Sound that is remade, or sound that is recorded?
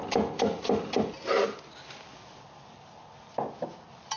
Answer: recorded